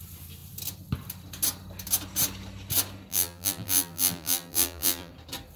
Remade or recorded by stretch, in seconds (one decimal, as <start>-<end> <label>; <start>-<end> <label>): 0.0-3.1 recorded; 3.1-5.1 remade; 5.1-5.6 recorded